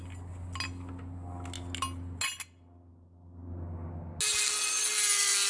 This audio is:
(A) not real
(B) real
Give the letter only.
B